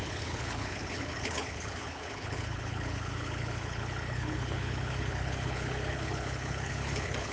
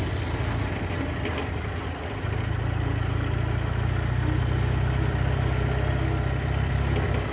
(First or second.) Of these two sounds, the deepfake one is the first